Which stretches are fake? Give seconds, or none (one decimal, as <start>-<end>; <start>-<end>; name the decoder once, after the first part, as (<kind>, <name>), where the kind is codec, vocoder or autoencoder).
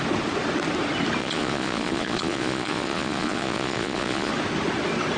1.2-4.3 (vocoder, Vocos)